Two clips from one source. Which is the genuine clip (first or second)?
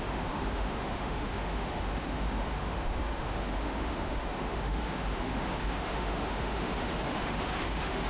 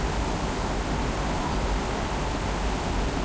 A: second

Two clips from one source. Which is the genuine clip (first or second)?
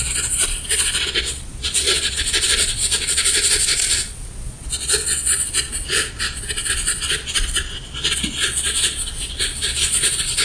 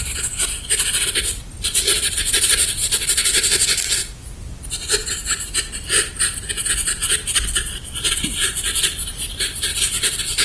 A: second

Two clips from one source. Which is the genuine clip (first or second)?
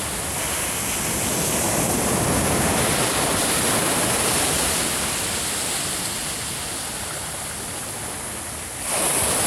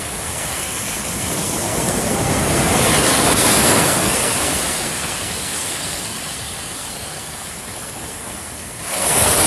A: first